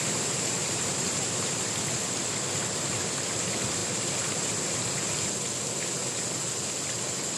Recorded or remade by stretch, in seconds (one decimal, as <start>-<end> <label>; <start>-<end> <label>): 0.0-0.6 recorded; 0.6-1.6 remade; 1.6-7.4 recorded